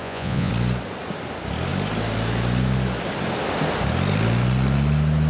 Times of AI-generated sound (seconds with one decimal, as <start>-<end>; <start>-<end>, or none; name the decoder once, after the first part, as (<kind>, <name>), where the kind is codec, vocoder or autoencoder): 0.0-0.5 (vocoder, Vocos)